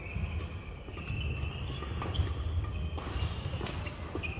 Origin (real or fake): real